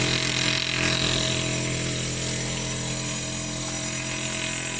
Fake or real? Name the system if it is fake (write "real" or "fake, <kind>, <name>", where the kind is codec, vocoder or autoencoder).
real